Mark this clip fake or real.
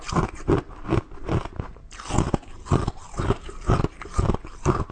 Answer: real